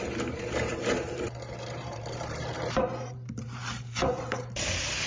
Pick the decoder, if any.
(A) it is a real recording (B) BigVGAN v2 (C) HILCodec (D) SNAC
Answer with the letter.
B